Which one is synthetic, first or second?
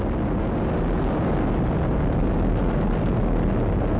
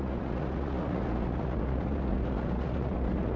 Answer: second